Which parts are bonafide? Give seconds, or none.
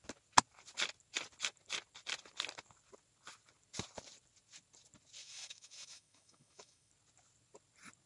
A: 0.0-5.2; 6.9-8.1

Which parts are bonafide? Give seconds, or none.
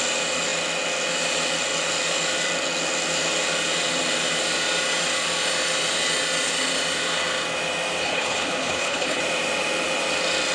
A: 0.0-8.0; 9.2-10.5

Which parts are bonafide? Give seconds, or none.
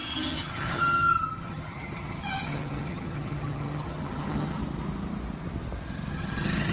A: 4.6-6.1